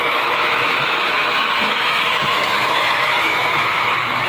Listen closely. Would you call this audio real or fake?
fake